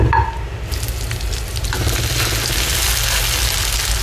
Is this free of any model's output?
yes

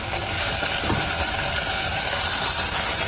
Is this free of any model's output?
yes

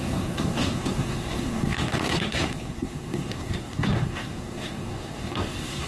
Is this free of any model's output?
no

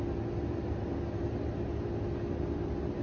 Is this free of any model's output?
yes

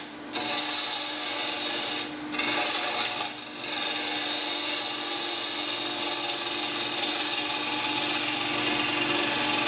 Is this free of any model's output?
yes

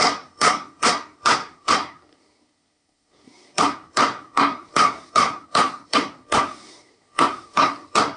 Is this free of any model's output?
no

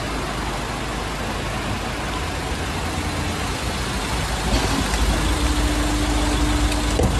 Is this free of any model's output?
yes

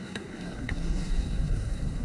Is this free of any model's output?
no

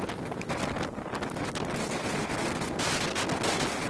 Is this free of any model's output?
yes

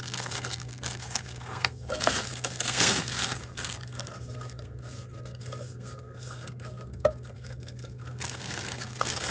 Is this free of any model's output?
no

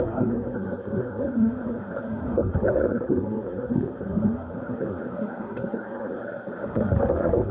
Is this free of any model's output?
no